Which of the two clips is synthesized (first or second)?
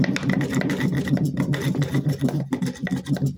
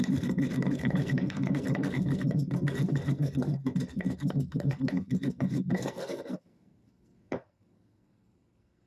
second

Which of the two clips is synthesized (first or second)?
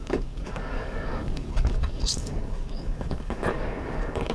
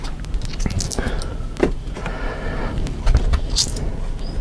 first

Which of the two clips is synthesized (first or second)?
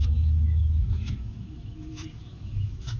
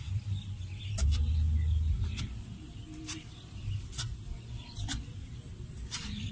first